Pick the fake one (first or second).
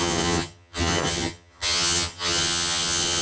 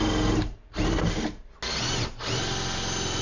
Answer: first